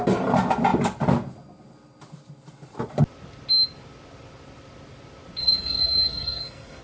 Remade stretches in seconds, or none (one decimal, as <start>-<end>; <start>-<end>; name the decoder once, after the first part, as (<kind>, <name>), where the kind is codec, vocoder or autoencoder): 5.4-6.8 (codec, SNAC)